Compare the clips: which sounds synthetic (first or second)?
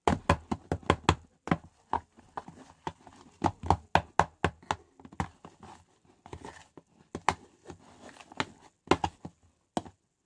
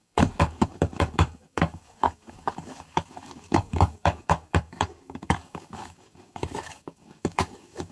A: second